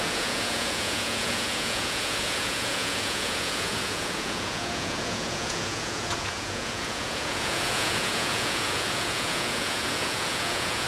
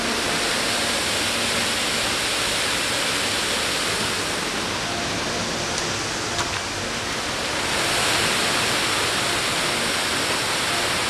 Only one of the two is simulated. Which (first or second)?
first